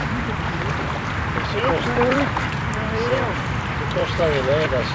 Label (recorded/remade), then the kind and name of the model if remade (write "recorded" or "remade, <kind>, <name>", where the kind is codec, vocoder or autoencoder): remade, vocoder, BigVGAN v2